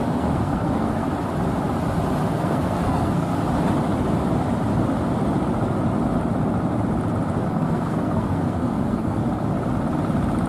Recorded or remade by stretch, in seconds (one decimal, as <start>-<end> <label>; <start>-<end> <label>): 0.0-1.1 remade; 1.1-2.3 recorded; 2.3-3.3 remade; 3.3-7.5 recorded; 7.5-9.2 remade; 9.2-10.5 recorded